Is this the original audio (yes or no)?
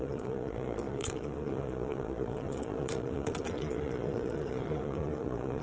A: no